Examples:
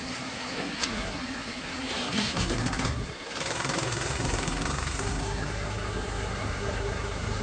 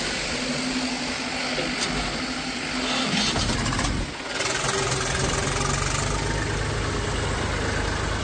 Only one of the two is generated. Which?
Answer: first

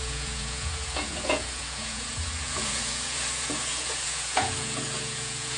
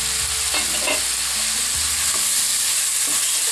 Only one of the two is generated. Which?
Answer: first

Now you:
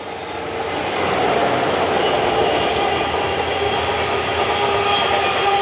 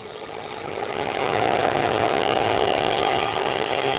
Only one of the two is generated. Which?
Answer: second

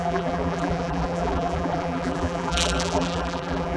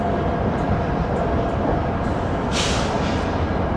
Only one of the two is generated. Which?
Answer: first